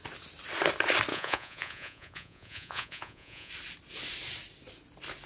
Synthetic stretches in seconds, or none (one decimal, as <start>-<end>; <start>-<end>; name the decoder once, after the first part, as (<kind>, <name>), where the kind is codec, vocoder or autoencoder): 1.1-3.5 (vocoder, Vocos)